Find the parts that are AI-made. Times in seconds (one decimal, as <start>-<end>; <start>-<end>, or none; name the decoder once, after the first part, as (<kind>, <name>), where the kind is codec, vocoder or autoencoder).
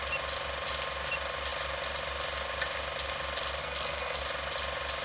3.6-4.2 (codec, SNAC)